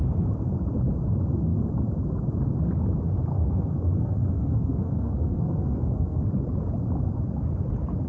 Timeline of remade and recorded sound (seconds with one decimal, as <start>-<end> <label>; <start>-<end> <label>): 0.0-3.3 recorded; 3.3-6.2 remade; 6.2-8.1 recorded